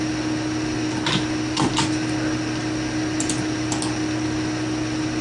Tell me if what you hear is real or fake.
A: real